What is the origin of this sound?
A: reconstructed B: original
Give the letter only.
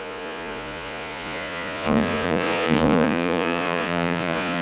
A